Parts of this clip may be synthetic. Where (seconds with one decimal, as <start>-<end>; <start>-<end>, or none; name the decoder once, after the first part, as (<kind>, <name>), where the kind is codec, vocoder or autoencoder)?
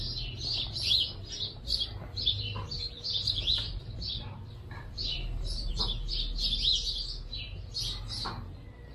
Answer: 0.5-5.7 (vocoder, BigVGAN v2)